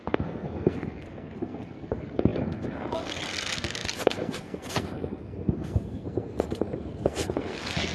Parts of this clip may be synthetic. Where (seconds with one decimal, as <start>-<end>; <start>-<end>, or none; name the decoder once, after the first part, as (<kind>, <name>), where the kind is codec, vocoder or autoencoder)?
0.0-7.9 (codec, SNAC)